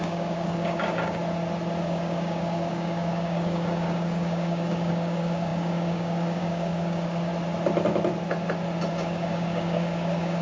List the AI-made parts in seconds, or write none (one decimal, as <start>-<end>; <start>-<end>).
0.0-1.2; 1.8-7.3; 8.9-10.4